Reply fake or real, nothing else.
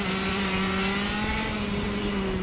real